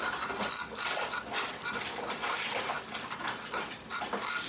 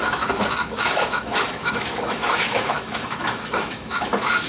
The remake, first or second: second